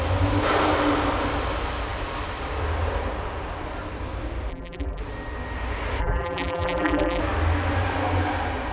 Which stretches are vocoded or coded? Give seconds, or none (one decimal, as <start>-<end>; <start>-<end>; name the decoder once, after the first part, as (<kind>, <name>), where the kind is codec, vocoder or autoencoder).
4.5-5.0 (vocoder, BigVGAN v2); 6.0-7.2